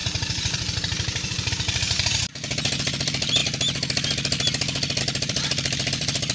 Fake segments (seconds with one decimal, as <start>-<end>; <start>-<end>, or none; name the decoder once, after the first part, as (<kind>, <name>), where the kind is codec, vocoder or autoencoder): 0.0-2.2 (vocoder, BigVGAN v2); 3.0-3.4; 5.0-6.3